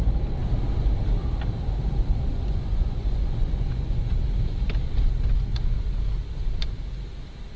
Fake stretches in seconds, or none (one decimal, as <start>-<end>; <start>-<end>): 2.3-4.2